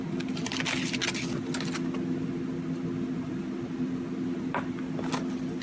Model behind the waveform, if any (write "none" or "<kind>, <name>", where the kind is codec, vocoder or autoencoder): none